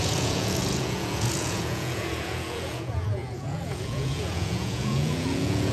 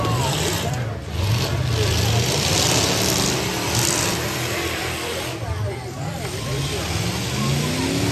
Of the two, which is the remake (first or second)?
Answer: first